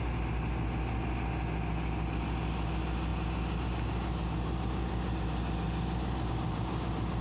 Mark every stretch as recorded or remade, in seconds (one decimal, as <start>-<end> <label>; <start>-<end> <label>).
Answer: 0.0-7.2 recorded